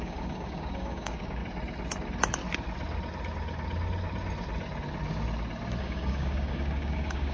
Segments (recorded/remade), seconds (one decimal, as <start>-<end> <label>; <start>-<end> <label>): 0.0-1.4 remade; 1.4-5.8 recorded; 5.8-7.3 remade